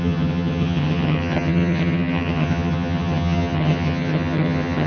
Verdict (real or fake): fake